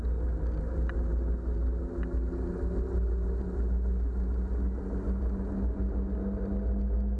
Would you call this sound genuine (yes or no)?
yes